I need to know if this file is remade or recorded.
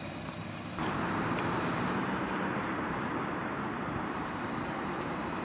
remade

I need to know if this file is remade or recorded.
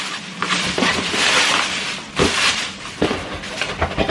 remade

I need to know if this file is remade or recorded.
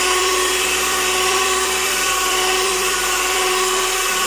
remade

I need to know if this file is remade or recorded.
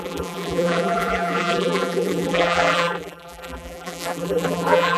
remade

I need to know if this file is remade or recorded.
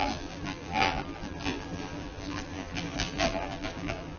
remade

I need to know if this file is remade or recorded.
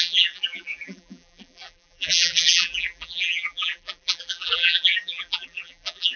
remade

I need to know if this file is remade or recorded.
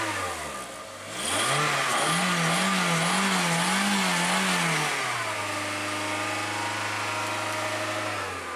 recorded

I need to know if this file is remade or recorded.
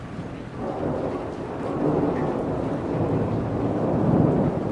recorded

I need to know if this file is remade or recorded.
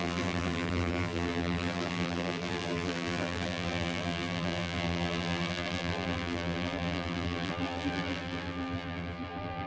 remade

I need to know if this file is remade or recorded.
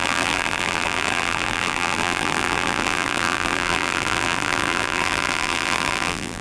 remade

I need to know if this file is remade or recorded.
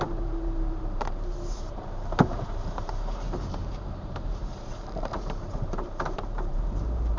remade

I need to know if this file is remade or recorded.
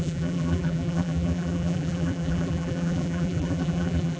remade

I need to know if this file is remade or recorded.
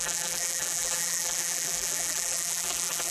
remade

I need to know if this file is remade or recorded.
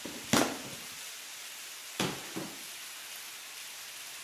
recorded